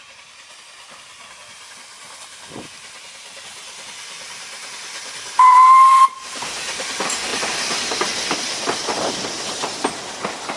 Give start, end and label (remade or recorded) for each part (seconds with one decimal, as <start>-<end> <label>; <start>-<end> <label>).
0.0-10.6 recorded